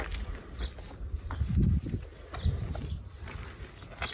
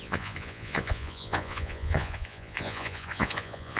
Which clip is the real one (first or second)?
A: first